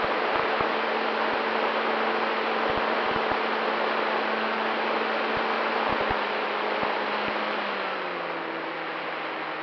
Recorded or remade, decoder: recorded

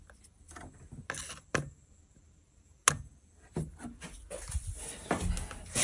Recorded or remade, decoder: recorded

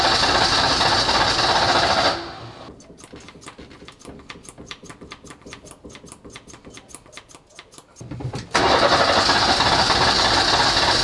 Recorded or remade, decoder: recorded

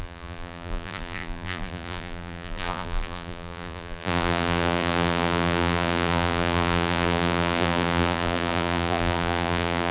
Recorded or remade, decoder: remade, vocoder, BigVGAN v2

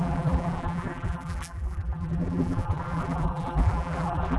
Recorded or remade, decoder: remade, vocoder, BigVGAN v2